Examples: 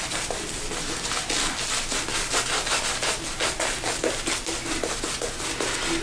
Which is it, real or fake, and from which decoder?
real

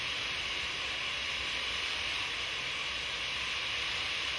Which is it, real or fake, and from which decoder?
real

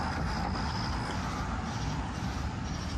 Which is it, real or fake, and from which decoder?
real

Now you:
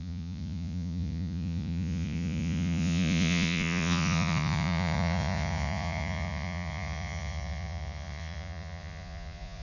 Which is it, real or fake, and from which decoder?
fake, vocoder, Vocos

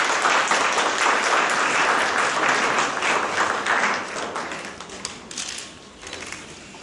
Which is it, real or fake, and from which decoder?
real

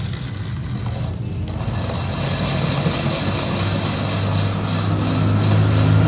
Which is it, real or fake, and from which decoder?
real